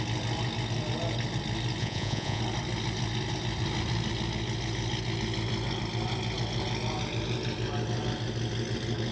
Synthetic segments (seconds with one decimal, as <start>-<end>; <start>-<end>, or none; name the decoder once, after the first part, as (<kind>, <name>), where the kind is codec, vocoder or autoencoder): 1.8-2.4 (vocoder, Vocos)